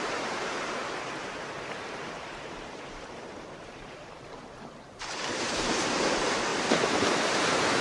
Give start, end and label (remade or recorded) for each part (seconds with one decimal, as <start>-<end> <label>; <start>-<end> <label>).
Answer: 0.0-6.5 remade; 6.5-7.8 recorded